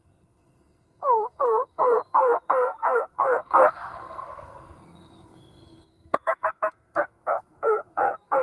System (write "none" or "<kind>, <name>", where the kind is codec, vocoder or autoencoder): codec, SNAC